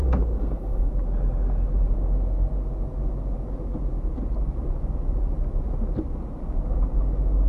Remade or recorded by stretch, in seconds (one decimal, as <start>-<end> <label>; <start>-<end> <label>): 0.0-0.9 remade; 0.9-7.5 recorded